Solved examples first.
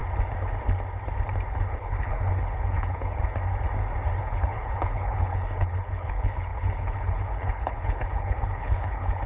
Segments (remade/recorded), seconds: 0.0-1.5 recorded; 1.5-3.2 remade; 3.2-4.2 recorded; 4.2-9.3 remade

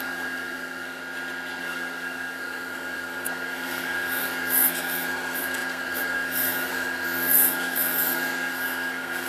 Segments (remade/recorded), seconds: 0.0-1.0 remade; 1.0-1.6 recorded; 1.6-9.3 remade

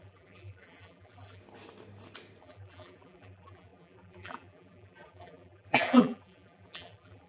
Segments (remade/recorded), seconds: 0.0-1.4 remade; 1.4-2.4 recorded; 2.4-7.3 remade

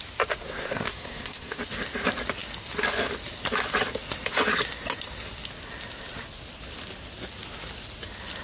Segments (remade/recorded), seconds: 0.0-0.4 recorded; 0.4-1.6 remade; 1.6-8.4 recorded

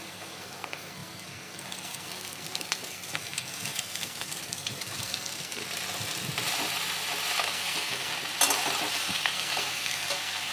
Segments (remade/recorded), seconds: 0.0-5.6 remade; 5.6-7.4 recorded; 7.4-8.1 remade; 8.1-8.9 recorded; 8.9-10.5 remade

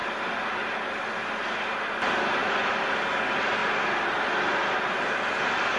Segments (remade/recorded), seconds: 0.0-2.4 recorded; 2.4-3.0 remade; 3.0-5.8 recorded

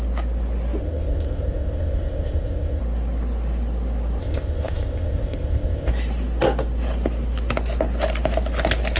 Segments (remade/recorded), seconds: 0.0-0.8 recorded; 0.8-2.8 remade; 2.8-4.2 recorded; 4.2-5.9 remade; 5.9-9.0 recorded

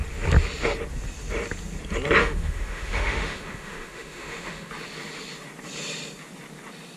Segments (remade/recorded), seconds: 0.0-2.2 recorded; 2.2-4.7 remade; 4.7-7.0 recorded